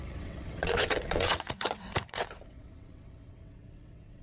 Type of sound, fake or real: fake